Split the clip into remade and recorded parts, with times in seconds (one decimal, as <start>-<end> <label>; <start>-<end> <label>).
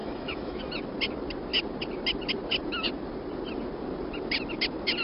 0.0-0.6 remade; 0.6-5.0 recorded